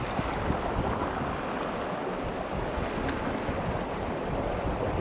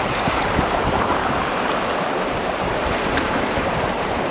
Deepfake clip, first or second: second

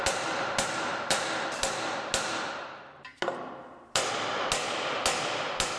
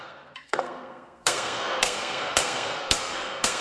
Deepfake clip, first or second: second